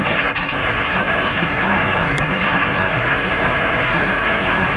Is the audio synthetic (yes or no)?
yes